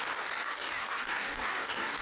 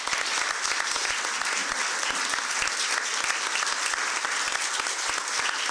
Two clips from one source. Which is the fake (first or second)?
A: first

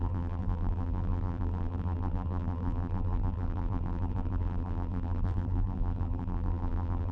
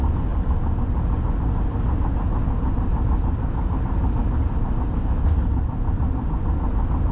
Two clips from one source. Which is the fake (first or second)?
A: first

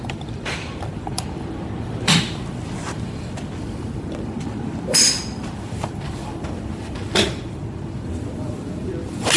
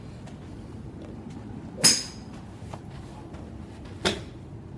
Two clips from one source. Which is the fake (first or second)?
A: first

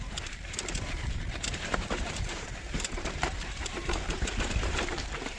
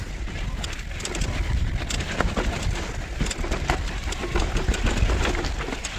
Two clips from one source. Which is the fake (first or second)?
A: first